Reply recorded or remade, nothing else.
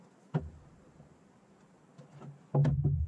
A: recorded